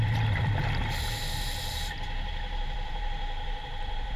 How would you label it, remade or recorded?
remade